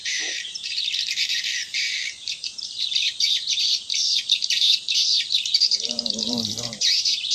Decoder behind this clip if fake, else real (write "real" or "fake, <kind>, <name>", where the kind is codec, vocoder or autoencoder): fake, vocoder, BigVGAN v2